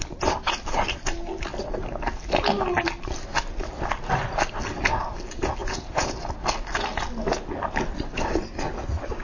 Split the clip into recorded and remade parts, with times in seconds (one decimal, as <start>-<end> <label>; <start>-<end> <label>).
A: 0.0-5.6 recorded; 5.6-6.2 remade; 6.2-9.2 recorded